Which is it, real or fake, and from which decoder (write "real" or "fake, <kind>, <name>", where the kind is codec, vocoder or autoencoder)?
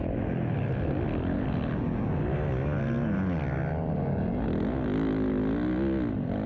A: real